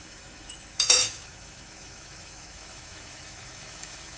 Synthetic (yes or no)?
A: yes